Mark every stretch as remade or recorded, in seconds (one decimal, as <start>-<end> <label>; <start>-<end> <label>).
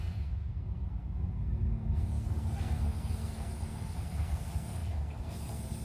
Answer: 0.0-5.8 remade